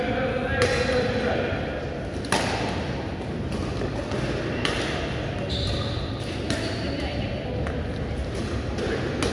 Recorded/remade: recorded